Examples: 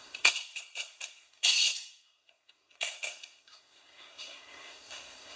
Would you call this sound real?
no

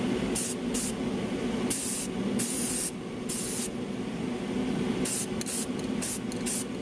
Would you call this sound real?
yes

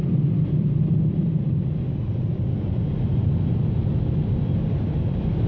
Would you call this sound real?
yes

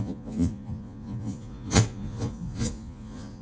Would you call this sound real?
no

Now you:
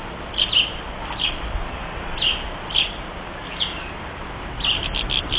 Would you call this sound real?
no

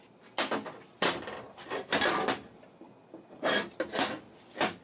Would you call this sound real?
yes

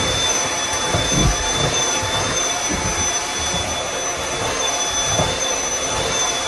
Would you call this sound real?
yes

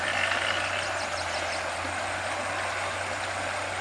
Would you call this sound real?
yes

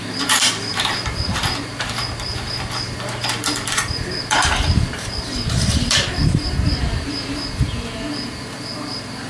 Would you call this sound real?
no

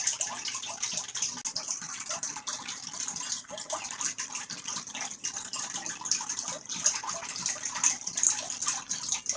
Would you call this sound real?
yes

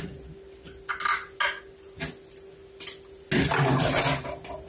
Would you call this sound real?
yes